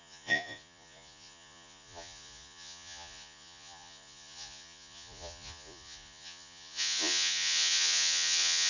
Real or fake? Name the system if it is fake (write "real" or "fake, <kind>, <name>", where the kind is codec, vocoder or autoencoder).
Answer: fake, vocoder, Vocos